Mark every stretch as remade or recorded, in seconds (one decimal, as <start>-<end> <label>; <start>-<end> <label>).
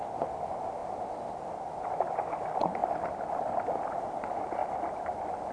0.0-4.6 recorded; 4.6-5.5 remade